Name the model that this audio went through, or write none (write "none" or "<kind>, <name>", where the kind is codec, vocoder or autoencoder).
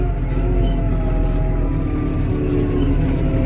none